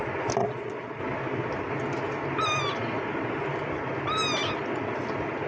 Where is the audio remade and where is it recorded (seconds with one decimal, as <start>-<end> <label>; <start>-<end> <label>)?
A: 0.0-0.4 recorded; 0.4-1.0 remade; 1.0-5.5 recorded